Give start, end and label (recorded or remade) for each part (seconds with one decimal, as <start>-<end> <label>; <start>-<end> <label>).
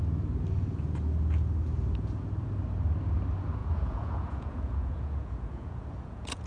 0.0-3.6 recorded; 3.6-6.5 remade